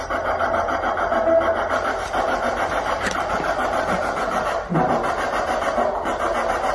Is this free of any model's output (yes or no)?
yes